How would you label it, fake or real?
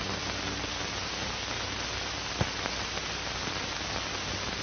real